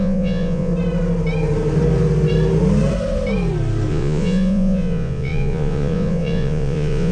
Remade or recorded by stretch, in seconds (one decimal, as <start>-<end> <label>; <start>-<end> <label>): 0.0-0.7 remade; 0.7-3.9 recorded; 3.9-7.1 remade